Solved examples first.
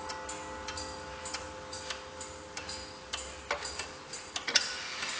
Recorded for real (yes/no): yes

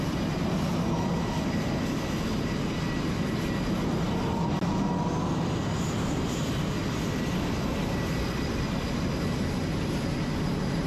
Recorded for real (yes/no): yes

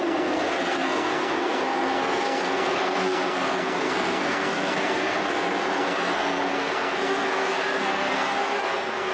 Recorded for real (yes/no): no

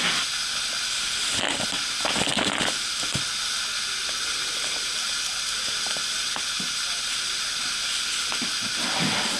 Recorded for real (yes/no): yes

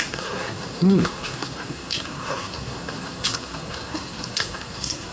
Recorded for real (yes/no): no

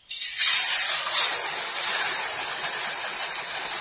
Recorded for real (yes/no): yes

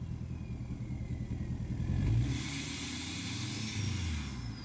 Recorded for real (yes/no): yes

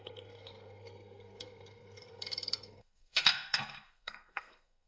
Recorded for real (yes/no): no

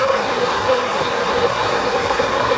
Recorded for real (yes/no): no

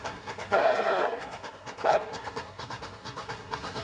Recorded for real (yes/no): no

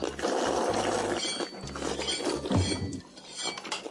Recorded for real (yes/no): yes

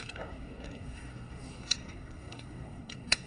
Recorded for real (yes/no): no